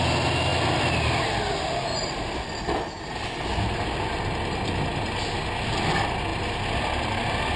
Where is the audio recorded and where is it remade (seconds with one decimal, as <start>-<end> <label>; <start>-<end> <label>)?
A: 0.0-7.6 recorded